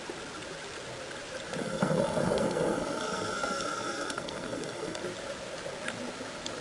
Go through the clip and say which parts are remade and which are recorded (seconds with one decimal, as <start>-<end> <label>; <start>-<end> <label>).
0.0-1.6 recorded; 1.6-5.0 remade; 5.0-6.6 recorded